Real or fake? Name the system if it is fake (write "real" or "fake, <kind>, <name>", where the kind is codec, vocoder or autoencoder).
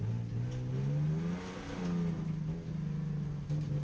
real